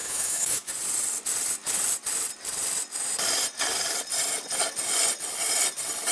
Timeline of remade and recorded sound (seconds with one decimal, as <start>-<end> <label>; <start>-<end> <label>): 0.0-0.7 remade; 0.7-6.1 recorded